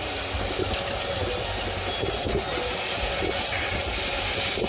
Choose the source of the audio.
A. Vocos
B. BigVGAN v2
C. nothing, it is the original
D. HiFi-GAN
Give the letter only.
C